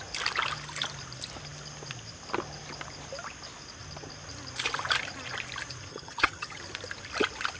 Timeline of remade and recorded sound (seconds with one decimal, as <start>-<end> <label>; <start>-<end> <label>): 0.0-5.9 recorded; 5.9-6.6 remade; 6.6-7.6 recorded